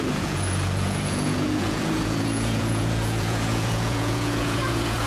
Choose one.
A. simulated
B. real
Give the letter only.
A